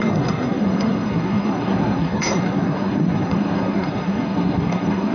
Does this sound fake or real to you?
fake